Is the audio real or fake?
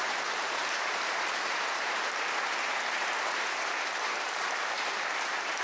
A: fake